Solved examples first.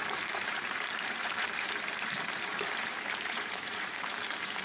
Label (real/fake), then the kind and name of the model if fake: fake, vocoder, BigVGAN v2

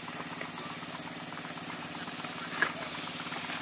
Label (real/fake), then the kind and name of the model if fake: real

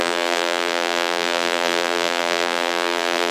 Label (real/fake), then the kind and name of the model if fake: fake, vocoder, BigVGAN v2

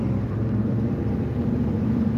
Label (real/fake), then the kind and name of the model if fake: fake, vocoder, BigVGAN v2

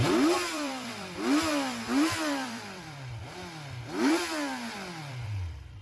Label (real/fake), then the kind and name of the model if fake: fake, vocoder, BigVGAN v2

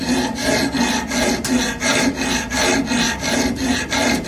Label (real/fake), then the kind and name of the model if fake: real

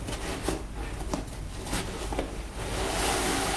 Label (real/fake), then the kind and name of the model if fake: real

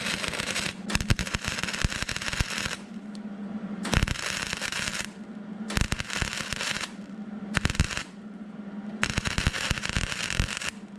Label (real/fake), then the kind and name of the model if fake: fake, vocoder, BigVGAN v2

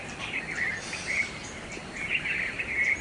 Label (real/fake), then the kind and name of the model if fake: fake, vocoder, BigVGAN v2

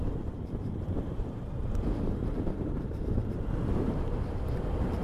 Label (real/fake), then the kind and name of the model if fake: fake, vocoder, BigVGAN v2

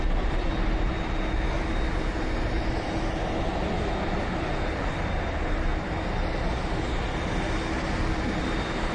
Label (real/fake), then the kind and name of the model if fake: real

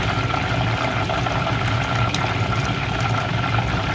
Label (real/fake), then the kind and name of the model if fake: real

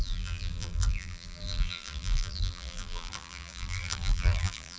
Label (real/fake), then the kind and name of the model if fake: fake, vocoder, BigVGAN v2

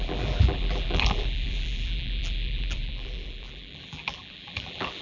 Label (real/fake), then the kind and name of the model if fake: fake, vocoder, BigVGAN v2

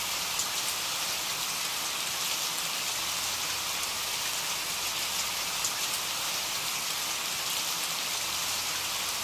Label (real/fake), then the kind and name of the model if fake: real